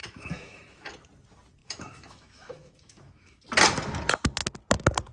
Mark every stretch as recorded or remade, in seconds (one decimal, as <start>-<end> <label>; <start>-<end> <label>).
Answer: 0.0-0.9 remade; 0.9-1.6 recorded; 1.6-3.4 remade; 3.4-5.1 recorded